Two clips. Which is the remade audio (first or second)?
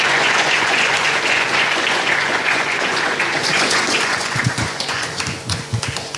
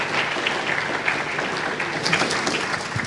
first